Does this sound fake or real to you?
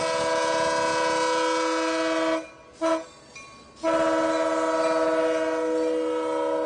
real